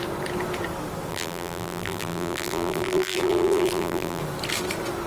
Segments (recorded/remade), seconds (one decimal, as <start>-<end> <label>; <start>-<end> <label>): 0.0-1.1 recorded; 1.1-4.2 remade; 4.2-5.1 recorded